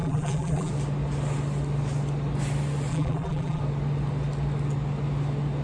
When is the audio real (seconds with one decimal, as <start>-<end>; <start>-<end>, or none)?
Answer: 0.7-2.9; 3.6-5.6